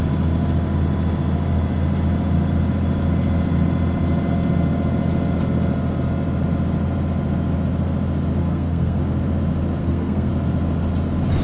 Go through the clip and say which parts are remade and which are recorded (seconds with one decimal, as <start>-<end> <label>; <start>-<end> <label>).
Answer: 0.0-8.4 recorded; 8.4-9.0 remade; 9.0-9.8 recorded; 9.8-10.3 remade; 10.3-11.4 recorded